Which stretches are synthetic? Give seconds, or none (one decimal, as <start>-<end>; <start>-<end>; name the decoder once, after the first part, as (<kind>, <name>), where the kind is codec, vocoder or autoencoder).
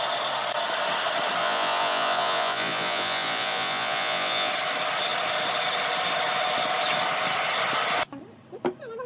1.4-4.5 (vocoder, Vocos)